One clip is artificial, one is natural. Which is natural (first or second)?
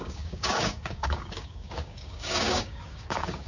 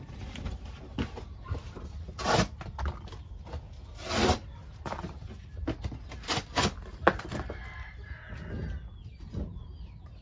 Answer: second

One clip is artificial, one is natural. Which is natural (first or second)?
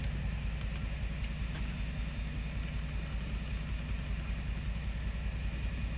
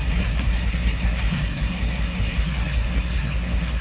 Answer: first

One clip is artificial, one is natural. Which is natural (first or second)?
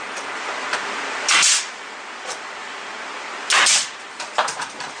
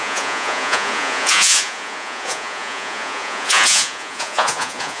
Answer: first